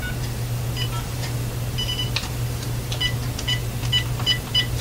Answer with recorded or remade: recorded